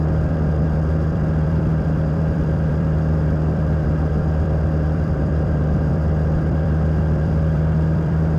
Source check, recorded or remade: remade